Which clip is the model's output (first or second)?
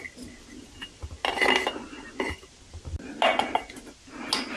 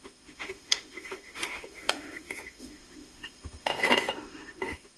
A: second